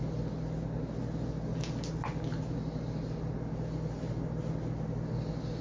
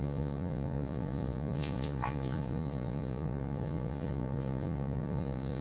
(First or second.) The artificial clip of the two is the second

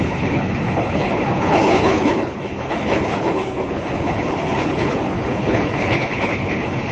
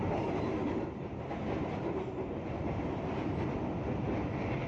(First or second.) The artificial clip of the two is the first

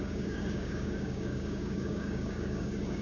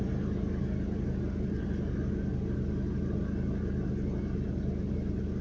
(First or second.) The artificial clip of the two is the first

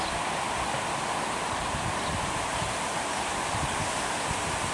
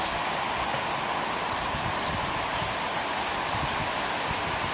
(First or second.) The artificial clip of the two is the first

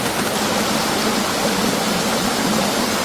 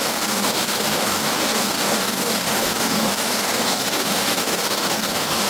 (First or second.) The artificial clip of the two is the second